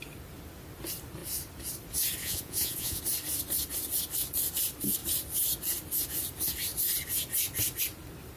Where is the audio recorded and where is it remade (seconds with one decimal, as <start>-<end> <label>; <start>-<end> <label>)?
0.0-2.2 recorded; 2.2-3.0 remade; 3.0-8.4 recorded